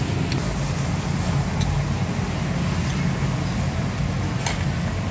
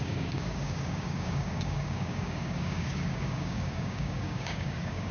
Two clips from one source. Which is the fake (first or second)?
second